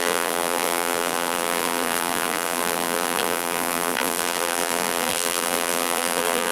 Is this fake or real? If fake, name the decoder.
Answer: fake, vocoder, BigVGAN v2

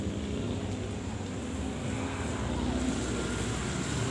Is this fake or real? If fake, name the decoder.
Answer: real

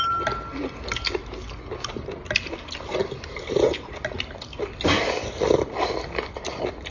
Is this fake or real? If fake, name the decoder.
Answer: real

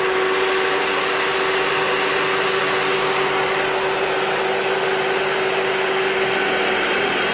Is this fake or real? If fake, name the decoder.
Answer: real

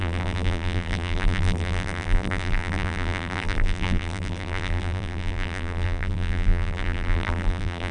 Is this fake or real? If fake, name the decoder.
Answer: fake, vocoder, BigVGAN v2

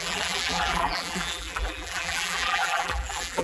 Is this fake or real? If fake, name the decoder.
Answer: fake, vocoder, BigVGAN v2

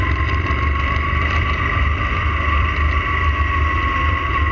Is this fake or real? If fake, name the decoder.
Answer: fake, vocoder, BigVGAN v2